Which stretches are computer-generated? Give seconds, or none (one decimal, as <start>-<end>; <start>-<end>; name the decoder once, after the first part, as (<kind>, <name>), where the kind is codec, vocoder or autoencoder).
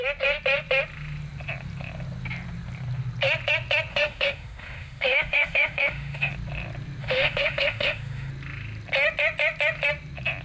3.9-6.3 (autoencoder, DAC-VAE); 7.0-8.3